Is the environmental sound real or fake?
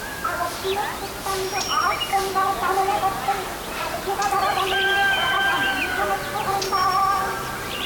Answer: real